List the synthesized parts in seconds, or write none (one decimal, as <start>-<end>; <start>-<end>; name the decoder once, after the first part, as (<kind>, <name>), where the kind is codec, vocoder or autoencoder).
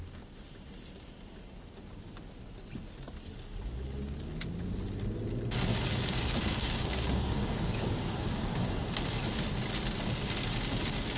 5.7-8.8 (codec, DAC)